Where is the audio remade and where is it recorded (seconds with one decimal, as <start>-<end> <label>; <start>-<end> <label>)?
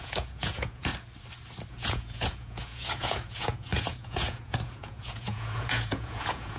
0.0-0.9 remade; 0.9-1.7 recorded; 1.7-6.6 remade